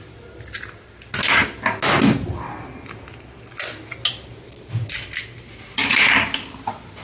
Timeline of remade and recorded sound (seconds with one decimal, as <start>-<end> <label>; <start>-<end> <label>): 0.0-7.0 recorded